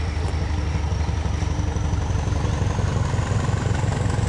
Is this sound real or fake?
real